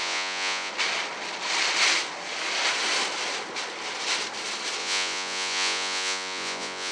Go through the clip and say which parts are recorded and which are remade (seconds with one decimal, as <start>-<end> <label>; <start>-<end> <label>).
0.0-0.7 remade; 0.7-4.8 recorded; 4.8-6.9 remade